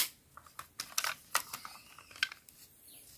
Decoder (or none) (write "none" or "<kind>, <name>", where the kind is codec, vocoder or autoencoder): none